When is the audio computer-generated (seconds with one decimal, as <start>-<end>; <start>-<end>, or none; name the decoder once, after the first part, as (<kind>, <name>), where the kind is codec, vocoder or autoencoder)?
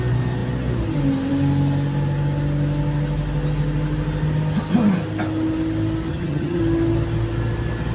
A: 6.1-6.6 (vocoder, HiFi-GAN)